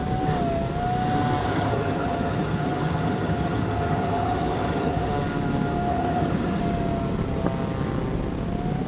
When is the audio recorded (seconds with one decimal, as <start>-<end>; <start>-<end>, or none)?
0.0-1.4; 5.1-5.9; 6.6-8.9